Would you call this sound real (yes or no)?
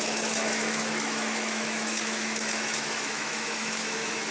no